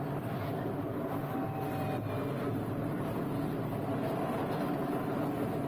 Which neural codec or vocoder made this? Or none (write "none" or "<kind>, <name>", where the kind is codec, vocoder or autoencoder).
none